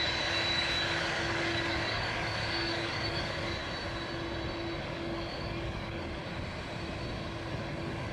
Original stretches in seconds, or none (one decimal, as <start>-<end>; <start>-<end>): 3.6-4.8; 6.2-7.5